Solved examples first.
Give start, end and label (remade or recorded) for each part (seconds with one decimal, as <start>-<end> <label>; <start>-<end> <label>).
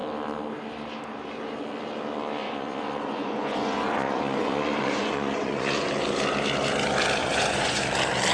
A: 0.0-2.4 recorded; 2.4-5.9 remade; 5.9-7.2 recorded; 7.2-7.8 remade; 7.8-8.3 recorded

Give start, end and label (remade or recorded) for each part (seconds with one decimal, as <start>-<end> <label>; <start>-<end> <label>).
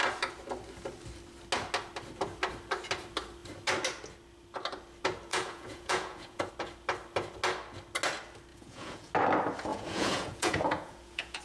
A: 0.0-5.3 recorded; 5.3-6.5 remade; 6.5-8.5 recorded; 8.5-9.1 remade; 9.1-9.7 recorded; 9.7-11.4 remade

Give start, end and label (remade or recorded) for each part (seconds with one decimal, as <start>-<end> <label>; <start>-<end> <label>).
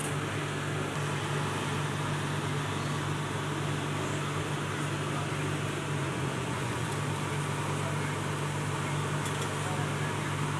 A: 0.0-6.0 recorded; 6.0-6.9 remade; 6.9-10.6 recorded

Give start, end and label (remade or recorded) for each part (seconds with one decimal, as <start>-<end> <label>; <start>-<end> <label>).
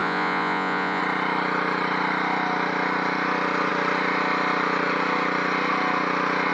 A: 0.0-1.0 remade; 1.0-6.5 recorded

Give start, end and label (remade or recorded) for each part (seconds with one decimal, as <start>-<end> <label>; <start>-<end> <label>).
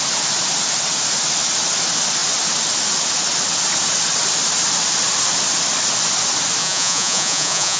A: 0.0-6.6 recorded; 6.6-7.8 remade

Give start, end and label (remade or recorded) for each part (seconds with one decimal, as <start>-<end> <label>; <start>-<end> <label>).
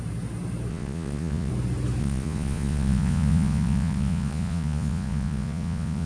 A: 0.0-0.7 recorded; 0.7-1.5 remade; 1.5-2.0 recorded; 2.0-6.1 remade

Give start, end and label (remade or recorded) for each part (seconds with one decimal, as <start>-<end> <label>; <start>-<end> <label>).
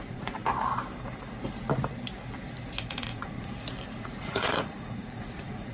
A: 0.0-0.4 remade; 0.4-2.8 recorded; 2.8-3.5 remade; 3.5-4.0 recorded; 4.0-5.7 remade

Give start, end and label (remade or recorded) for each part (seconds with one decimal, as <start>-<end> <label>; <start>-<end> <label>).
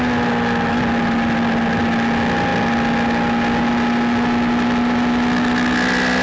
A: 0.0-6.2 recorded